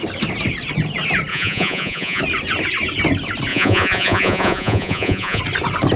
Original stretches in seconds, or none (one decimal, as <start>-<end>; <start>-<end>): 0.0-1.3; 2.2-3.5; 5.4-6.0